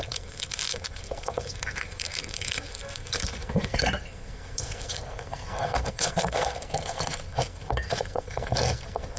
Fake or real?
fake